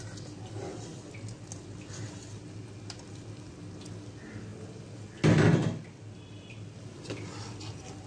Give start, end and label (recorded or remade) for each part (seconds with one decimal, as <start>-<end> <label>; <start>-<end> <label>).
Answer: 0.0-8.1 recorded